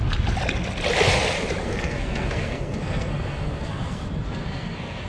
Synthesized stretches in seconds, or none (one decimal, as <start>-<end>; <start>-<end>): 1.6-5.1